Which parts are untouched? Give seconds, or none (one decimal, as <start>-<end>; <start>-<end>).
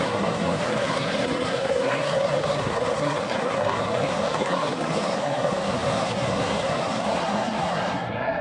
none